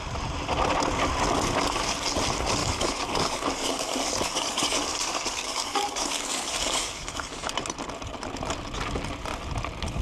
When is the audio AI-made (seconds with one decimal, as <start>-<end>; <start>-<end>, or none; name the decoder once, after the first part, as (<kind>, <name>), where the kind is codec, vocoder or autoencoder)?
2.6-7.5 (codec, DAC)